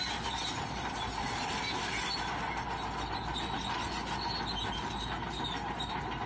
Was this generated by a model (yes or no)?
no